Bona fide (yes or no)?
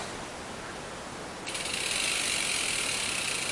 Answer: yes